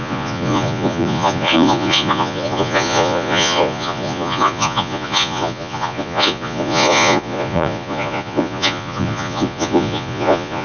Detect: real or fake fake